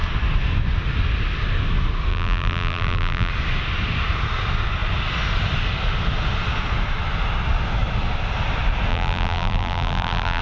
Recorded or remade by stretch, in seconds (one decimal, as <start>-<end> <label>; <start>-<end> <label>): 0.0-2.1 recorded; 2.1-3.3 remade; 3.3-8.9 recorded; 8.9-10.4 remade